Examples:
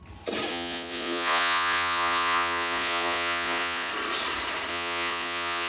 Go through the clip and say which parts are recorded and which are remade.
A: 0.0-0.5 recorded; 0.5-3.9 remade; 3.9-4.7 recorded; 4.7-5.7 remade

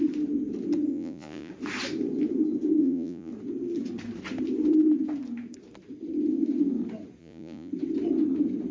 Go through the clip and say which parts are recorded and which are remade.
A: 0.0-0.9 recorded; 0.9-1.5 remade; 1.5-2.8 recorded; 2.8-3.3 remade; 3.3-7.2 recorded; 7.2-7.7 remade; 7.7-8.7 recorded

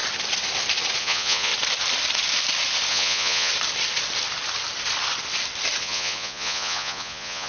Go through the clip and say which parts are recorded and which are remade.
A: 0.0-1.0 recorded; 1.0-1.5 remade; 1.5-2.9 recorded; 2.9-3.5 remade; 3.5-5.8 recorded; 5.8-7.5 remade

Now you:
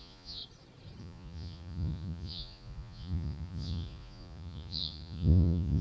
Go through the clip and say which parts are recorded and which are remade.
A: 0.0-0.4 remade; 0.4-1.0 recorded; 1.0-5.8 remade

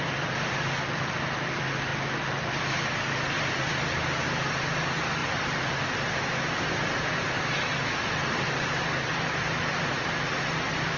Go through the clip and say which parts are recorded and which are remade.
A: 0.0-11.0 recorded

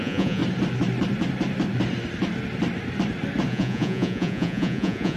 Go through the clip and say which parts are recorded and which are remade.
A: 0.0-0.4 remade; 0.4-3.5 recorded; 3.5-5.2 remade

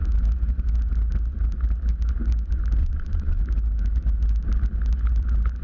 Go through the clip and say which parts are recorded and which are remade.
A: 0.0-2.8 recorded; 2.8-3.4 remade; 3.4-5.6 recorded

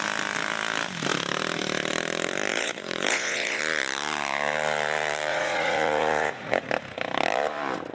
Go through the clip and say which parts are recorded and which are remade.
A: 0.0-2.5 recorded; 2.5-3.6 remade; 3.6-5.3 recorded; 5.3-6.7 remade; 6.7-7.9 recorded